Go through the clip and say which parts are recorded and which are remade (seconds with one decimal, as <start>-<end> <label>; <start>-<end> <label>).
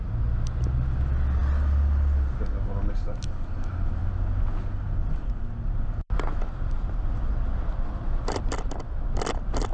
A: 0.0-9.7 recorded